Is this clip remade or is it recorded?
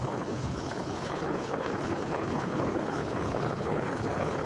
remade